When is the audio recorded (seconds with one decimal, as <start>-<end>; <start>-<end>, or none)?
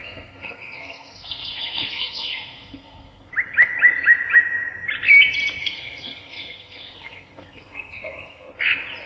3.3-5.6; 8.5-9.1